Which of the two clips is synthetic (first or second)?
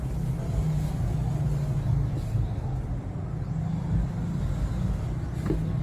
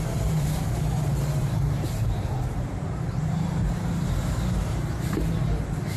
second